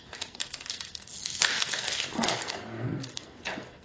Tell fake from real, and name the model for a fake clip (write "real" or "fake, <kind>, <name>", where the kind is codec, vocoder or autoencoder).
fake, codec, SNAC